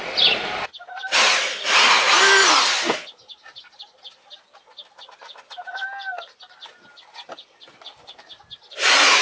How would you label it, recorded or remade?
recorded